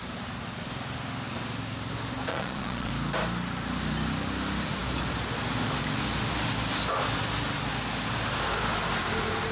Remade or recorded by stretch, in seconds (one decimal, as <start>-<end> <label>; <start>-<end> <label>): 0.0-2.3 recorded; 2.3-2.9 remade; 2.9-9.5 recorded